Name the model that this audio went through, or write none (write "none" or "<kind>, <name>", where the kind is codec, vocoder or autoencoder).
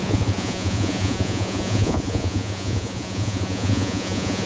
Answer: vocoder, Vocos